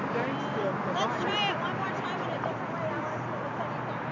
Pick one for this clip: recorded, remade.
recorded